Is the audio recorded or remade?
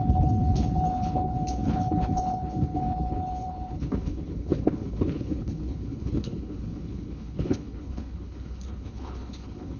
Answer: remade